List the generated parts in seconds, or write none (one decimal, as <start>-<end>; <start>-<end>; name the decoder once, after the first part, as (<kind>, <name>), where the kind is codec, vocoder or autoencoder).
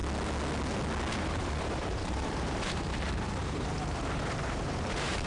1.2-5.3 (vocoder, BigVGAN v2)